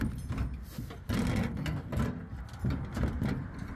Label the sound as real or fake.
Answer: real